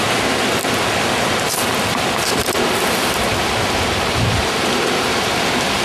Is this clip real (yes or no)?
yes